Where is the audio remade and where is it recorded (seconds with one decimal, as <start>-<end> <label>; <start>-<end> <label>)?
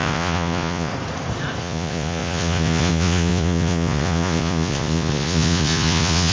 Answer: 0.0-0.9 remade; 0.9-1.6 recorded; 1.6-6.3 remade